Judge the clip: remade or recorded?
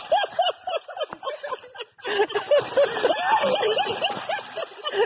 recorded